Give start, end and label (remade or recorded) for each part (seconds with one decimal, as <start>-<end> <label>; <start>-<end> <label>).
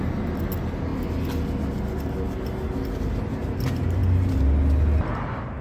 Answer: 0.0-5.6 recorded